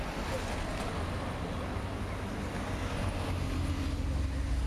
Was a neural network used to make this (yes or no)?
no